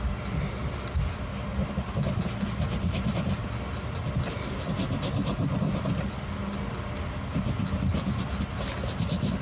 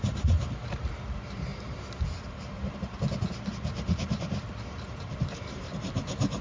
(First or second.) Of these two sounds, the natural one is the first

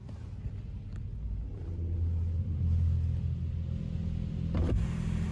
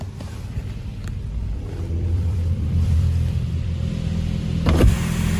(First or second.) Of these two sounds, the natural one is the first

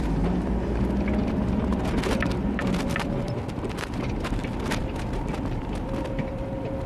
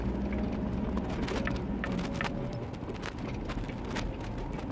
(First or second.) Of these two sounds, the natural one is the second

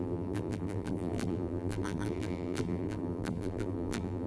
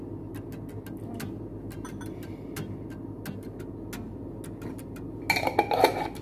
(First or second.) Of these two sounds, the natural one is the second